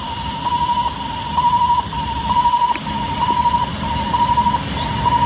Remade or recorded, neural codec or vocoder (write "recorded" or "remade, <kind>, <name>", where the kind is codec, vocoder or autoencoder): recorded